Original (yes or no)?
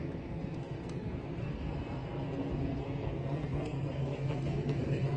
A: no